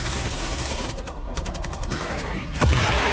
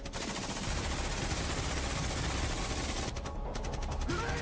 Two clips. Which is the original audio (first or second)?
second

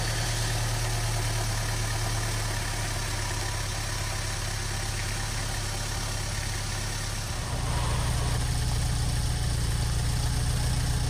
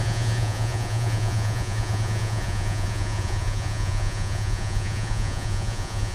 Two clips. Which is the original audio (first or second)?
first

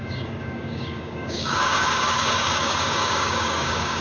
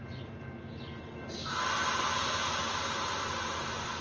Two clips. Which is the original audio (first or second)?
second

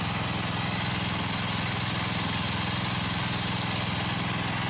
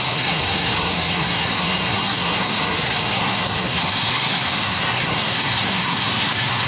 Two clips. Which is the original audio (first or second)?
first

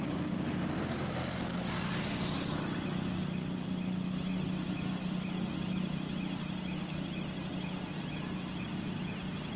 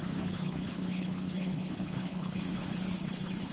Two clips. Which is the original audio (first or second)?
first